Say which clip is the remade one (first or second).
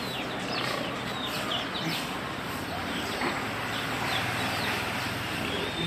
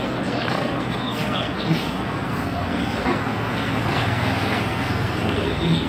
second